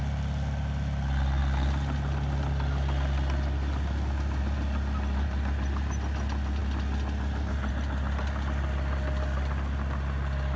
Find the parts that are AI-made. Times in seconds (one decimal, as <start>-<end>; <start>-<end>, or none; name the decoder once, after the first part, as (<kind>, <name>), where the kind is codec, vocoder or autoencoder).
none